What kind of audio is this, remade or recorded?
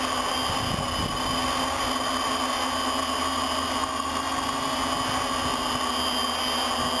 recorded